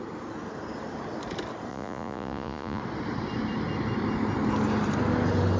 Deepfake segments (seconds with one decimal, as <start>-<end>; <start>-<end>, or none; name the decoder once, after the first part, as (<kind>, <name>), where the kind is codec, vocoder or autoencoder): 1.7-2.8 (vocoder, Vocos)